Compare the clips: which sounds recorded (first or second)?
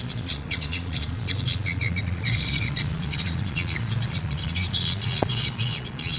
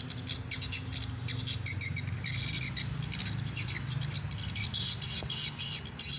second